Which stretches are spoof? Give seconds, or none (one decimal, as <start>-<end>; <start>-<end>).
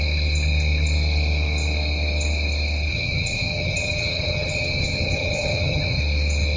2.9-6.0